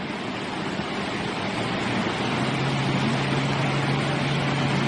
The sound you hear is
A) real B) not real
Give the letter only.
A